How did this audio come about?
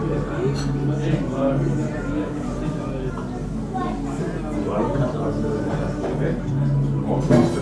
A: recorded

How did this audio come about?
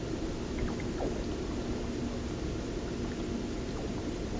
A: recorded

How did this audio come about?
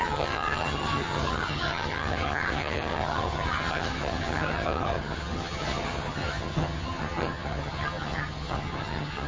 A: remade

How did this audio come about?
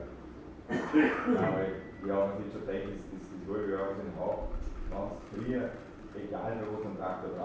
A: recorded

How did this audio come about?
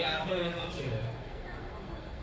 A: remade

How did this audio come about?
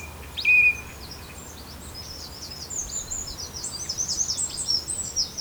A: recorded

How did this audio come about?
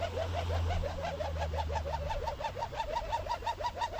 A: recorded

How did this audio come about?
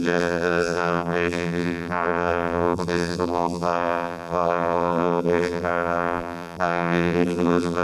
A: remade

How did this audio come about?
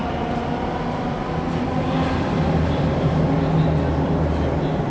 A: recorded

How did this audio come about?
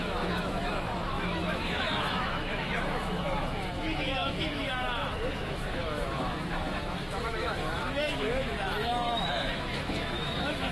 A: remade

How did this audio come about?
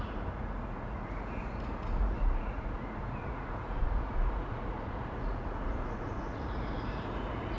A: remade